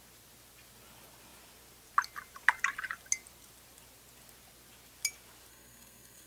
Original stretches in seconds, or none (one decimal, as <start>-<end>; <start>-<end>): 0.0-5.5